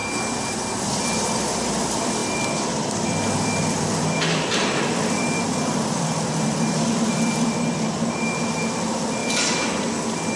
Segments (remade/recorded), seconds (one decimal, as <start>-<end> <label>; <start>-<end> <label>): 0.0-0.8 recorded; 0.8-9.2 remade; 9.2-10.4 recorded